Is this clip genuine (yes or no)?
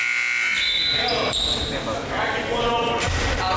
yes